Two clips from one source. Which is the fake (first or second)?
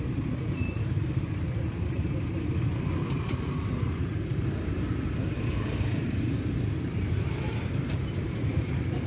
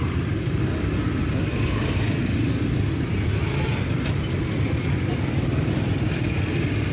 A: first